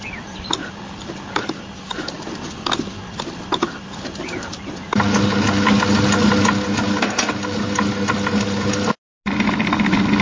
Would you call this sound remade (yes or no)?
no